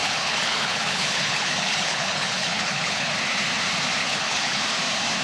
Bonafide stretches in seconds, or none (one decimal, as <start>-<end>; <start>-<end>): 3.1-4.0; 4.6-5.2